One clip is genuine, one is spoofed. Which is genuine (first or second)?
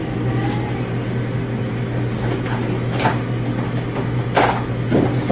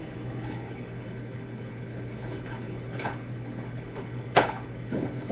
first